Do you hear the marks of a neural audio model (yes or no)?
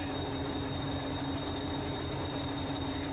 yes